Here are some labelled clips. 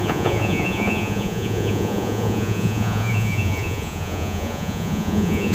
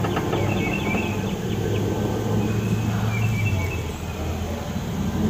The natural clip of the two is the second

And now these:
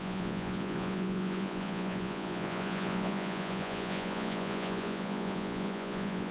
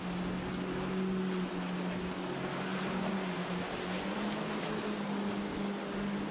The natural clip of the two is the second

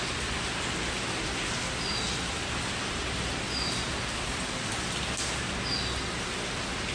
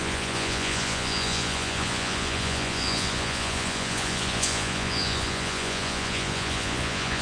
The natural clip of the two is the first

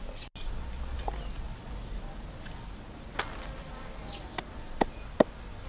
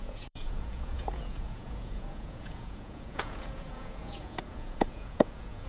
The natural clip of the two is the first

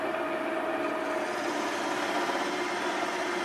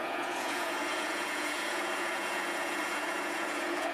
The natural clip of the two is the first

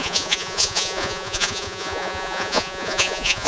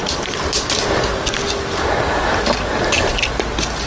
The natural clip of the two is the second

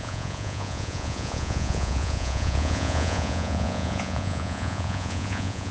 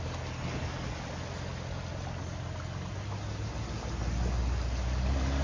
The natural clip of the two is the second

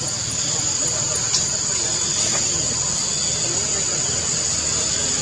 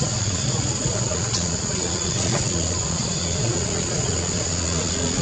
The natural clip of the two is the first